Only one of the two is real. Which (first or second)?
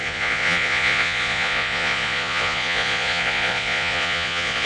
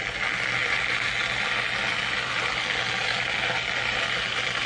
second